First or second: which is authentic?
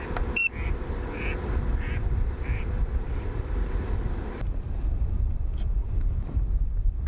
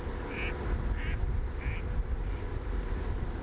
second